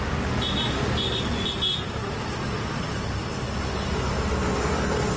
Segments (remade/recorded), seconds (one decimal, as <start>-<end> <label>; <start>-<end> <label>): 0.0-5.2 recorded